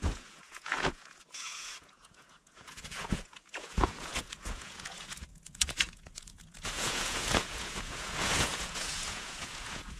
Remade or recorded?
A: remade